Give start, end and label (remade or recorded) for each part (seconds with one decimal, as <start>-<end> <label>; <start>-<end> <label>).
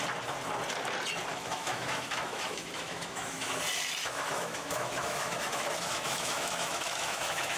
0.0-1.3 recorded; 1.3-3.6 remade; 3.6-4.0 recorded; 4.0-7.6 remade